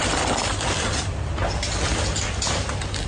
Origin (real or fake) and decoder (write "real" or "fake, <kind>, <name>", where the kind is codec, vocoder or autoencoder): real